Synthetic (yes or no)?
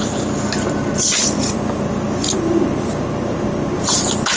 no